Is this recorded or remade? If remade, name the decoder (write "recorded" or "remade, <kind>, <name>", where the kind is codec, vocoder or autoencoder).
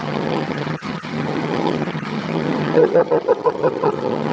remade, vocoder, HiFi-GAN